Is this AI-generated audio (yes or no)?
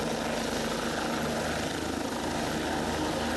no